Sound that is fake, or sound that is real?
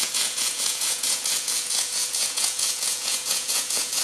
fake